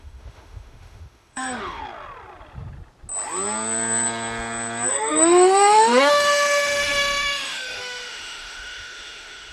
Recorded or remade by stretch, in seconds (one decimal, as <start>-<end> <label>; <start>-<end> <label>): 0.0-1.8 remade; 1.8-4.9 recorded; 4.9-9.5 remade